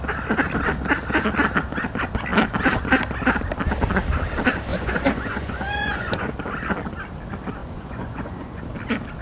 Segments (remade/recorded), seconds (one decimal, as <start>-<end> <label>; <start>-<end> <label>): 0.0-4.7 recorded; 4.7-6.3 remade; 6.3-7.6 recorded; 7.6-8.6 remade; 8.6-9.2 recorded